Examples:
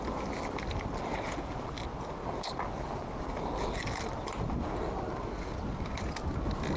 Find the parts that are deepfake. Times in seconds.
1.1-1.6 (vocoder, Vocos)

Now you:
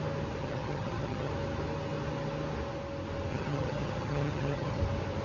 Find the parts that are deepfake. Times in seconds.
0.4-1.3 (vocoder, HiFi-GAN); 3.3-4.8

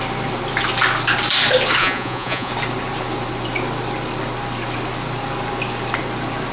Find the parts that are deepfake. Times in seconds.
1.8-2.5 (vocoder, Vocos)

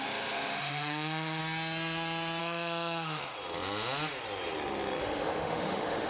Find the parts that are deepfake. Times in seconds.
0.0-1.4 (autoencoder, DAC-VAE); 2.4-3.2; 5.0-6.1

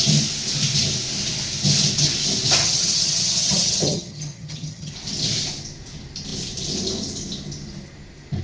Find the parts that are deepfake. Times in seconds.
2.6-4.9 (vocoder, HiFi-GAN)

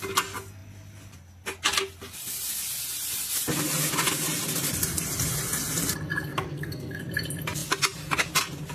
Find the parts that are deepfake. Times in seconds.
6.3-7.0 (codec, SNAC)

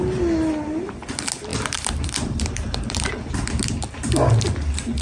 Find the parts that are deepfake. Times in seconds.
1.5-3.1 (vocoder, BigVGAN v2)

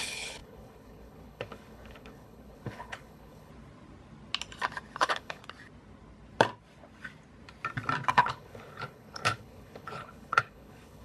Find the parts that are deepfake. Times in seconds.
0.0-3.5 (codec, HILCodec); 5.0-5.4; 8.1-11.0